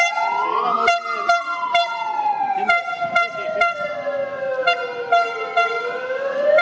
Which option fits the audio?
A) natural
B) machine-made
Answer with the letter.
A